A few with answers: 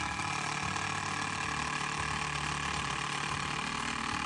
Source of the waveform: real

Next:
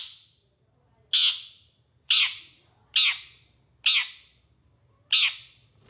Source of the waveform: real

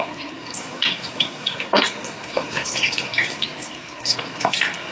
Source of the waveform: fake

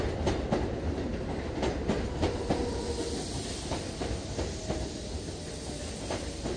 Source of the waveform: real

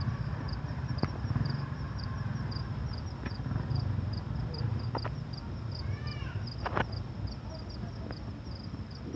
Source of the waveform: real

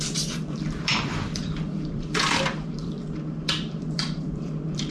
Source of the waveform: fake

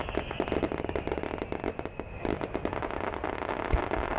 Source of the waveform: real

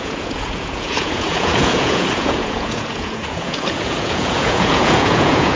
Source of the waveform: fake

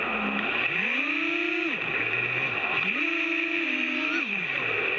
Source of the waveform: real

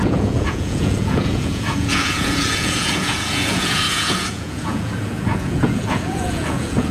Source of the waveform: fake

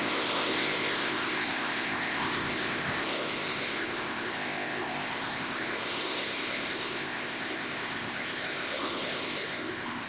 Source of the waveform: fake